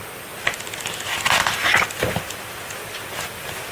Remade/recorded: recorded